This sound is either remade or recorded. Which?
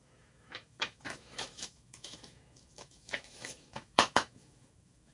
remade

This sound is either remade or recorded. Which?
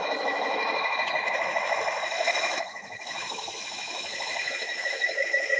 remade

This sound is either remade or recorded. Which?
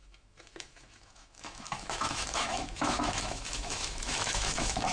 remade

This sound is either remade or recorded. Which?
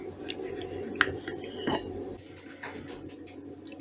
recorded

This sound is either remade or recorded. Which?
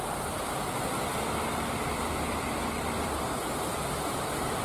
recorded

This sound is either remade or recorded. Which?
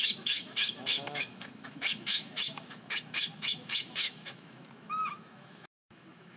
remade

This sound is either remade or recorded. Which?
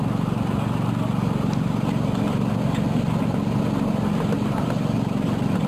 recorded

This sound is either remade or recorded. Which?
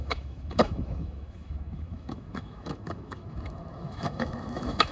remade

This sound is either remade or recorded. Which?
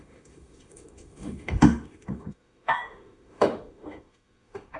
remade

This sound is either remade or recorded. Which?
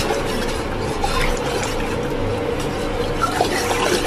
recorded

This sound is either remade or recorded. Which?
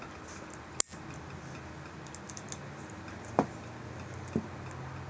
recorded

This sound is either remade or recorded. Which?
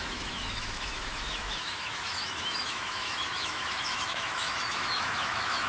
remade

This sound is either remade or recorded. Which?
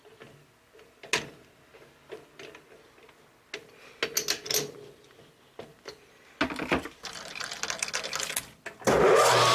recorded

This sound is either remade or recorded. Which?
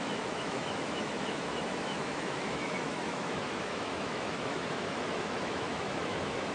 remade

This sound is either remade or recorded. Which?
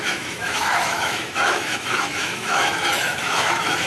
remade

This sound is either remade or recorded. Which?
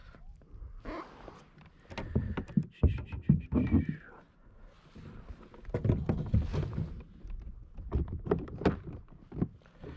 recorded